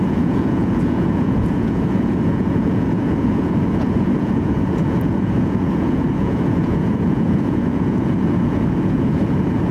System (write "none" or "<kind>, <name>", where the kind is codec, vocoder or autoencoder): vocoder, Vocos